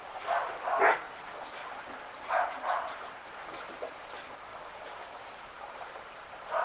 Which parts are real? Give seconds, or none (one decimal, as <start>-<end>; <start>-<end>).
0.0-1.6; 3.9-6.6